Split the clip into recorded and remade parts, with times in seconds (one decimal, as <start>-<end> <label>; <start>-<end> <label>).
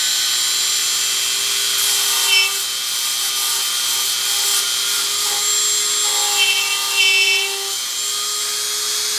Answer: 0.0-9.2 recorded